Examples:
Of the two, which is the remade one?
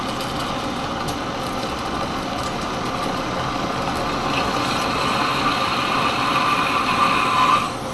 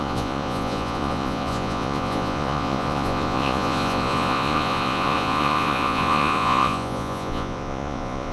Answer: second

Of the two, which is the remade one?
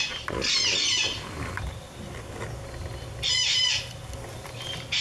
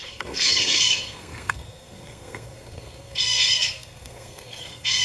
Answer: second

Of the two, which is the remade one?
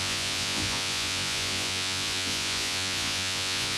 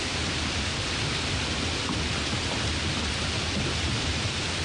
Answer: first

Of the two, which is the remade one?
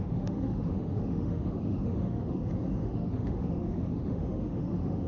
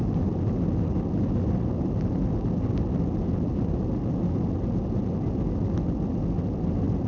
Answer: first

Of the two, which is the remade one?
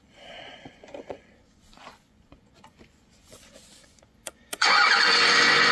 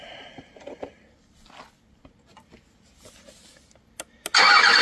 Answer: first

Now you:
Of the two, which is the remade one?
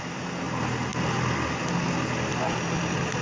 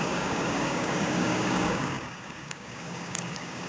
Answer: second